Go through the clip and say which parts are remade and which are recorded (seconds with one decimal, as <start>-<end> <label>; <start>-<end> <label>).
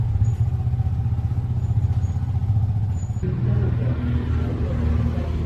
0.0-5.5 recorded